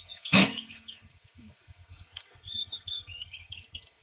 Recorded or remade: remade